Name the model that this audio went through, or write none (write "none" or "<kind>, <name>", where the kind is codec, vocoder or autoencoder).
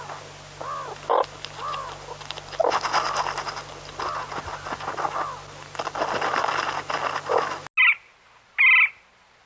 none